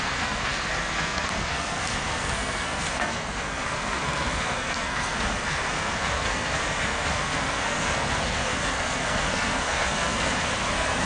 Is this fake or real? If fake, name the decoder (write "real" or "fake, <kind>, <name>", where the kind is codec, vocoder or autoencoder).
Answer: fake, codec, SNAC